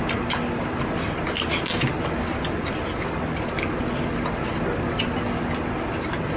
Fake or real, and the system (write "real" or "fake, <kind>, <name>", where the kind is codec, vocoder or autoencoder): real